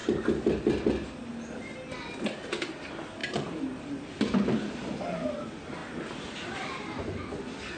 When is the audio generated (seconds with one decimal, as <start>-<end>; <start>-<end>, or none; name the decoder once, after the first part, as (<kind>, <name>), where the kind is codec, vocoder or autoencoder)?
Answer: 0.0-0.9 (vocoder, BigVGAN v2); 3.2-5.3